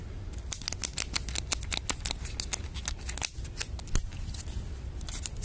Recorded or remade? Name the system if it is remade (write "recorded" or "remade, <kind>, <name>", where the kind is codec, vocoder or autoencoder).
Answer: recorded